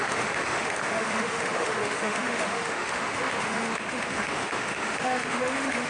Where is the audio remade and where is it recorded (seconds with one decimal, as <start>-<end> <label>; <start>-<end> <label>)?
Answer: 0.0-5.9 remade